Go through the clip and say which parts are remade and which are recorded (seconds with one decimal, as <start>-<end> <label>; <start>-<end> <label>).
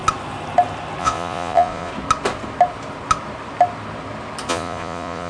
0.0-1.0 recorded; 1.0-1.9 remade; 1.9-4.5 recorded; 4.5-5.3 remade